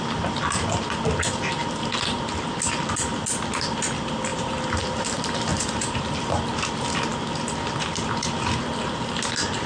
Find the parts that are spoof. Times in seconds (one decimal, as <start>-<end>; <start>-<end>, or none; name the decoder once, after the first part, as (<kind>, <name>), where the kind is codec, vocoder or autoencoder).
4.3-5.0 (vocoder, BigVGAN v2); 5.5-6.4